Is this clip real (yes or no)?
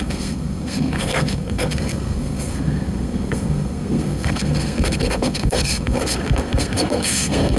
no